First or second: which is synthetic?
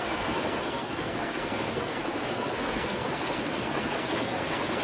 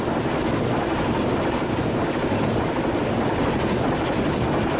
first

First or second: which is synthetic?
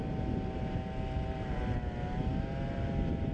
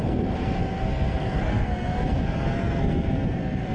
second